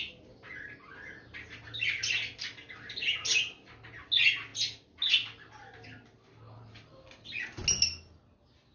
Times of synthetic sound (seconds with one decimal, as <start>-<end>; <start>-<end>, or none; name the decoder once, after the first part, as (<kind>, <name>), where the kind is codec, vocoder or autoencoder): none